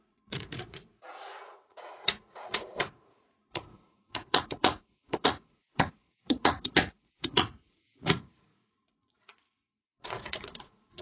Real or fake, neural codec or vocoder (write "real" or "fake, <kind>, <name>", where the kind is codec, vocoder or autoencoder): fake, vocoder, Vocos